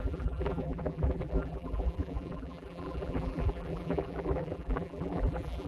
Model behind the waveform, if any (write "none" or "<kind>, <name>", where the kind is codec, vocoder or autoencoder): vocoder, BigVGAN v2